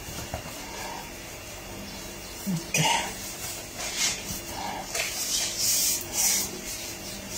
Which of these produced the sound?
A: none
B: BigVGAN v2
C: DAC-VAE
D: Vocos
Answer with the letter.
B